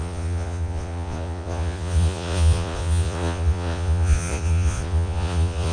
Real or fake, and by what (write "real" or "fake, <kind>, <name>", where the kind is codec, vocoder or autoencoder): fake, vocoder, Vocos